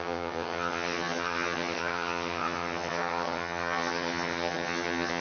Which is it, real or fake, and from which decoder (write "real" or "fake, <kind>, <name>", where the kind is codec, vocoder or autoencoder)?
fake, vocoder, HiFi-GAN